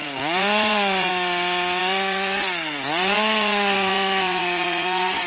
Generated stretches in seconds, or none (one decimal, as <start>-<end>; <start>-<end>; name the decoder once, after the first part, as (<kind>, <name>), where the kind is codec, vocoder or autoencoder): 0.0-1.1 (vocoder, Vocos); 1.8-5.3